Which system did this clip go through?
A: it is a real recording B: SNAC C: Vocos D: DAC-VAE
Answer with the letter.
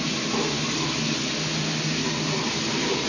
A